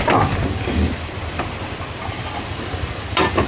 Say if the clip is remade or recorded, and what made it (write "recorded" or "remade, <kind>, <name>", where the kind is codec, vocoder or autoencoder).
remade, vocoder, BigVGAN v2